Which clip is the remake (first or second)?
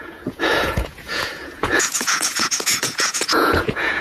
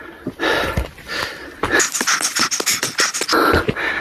first